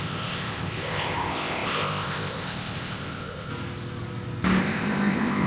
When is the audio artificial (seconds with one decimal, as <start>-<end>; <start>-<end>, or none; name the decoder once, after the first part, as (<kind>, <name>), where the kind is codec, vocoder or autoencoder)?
0.0-3.5 (codec, ZipCodec); 4.6-5.5